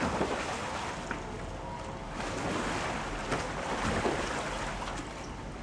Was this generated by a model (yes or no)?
no